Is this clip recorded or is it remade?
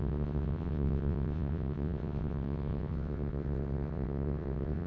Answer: remade